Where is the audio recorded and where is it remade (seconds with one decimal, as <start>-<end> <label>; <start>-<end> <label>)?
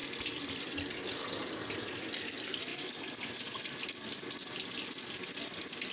0.0-5.9 recorded